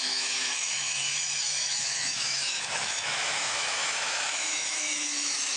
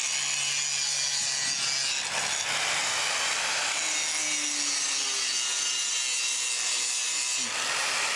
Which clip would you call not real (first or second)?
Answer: first